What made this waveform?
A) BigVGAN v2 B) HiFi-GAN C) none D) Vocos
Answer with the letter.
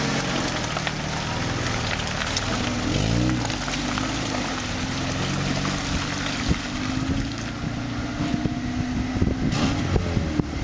C